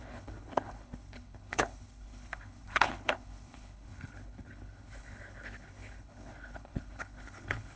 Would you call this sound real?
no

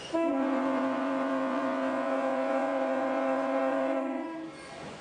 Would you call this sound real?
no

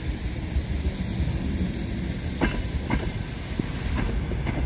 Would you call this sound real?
yes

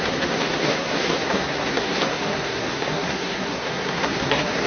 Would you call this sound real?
no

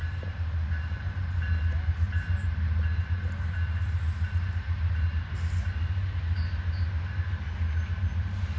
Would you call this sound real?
yes